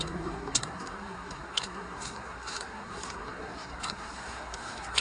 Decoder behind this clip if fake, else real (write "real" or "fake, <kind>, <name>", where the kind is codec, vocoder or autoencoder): fake, codec, SNAC